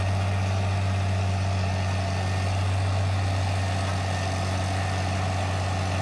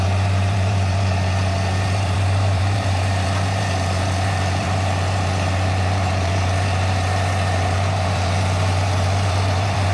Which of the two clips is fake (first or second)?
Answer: second